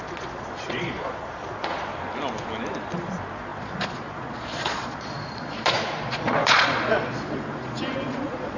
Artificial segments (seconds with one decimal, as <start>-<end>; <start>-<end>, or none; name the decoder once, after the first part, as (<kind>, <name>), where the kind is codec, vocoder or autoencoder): 0.0-1.9 (vocoder, Vocos); 2.7-8.6